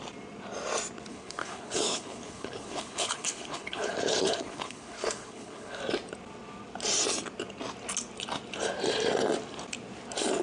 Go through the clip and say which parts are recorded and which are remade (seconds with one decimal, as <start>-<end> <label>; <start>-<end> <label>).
0.0-1.1 recorded; 1.1-5.8 remade; 5.8-10.4 recorded